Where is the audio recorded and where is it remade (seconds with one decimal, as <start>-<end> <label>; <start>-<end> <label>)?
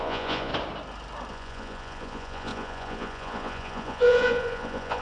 0.0-0.5 remade; 0.5-1.3 recorded; 1.3-5.0 remade